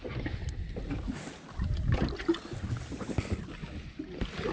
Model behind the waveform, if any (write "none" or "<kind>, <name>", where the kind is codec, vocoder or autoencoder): none